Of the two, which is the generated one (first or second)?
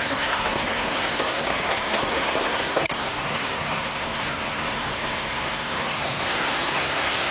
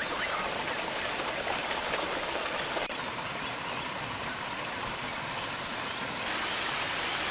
first